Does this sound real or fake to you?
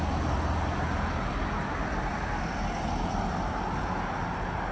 real